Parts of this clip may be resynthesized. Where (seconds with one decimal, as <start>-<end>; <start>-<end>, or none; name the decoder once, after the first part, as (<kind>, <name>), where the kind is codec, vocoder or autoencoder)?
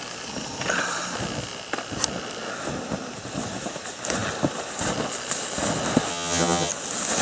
6.1-6.7 (vocoder, HiFi-GAN)